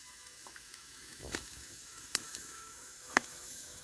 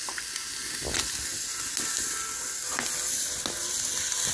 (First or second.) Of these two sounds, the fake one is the first